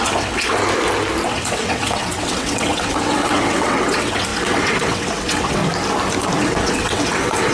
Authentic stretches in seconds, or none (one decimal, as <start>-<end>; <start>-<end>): 0.6-1.3; 5.6-6.4